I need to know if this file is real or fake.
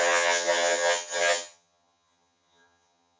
fake